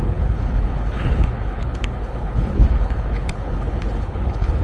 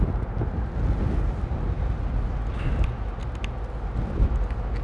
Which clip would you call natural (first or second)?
second